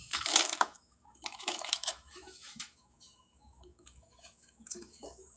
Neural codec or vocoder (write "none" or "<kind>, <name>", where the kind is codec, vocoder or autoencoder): autoencoder, DAC-VAE